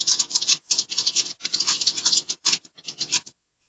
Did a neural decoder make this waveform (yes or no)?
yes